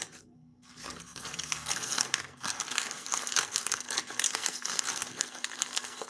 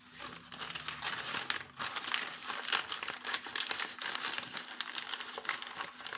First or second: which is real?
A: second